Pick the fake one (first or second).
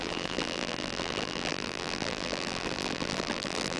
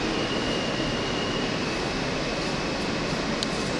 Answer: first